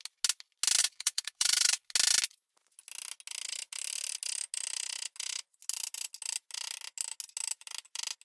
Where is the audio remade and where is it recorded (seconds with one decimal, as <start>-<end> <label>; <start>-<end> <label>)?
0.0-0.8 recorded; 0.8-1.9 remade; 1.9-8.2 recorded